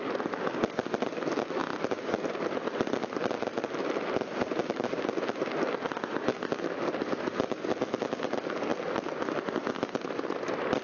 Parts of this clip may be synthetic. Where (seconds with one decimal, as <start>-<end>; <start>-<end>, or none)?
none